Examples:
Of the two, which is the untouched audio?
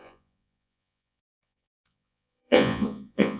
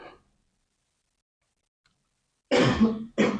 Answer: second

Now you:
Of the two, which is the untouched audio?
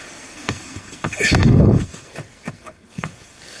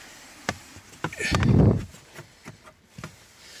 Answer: second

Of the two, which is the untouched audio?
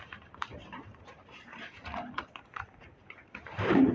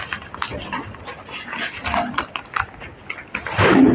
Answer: second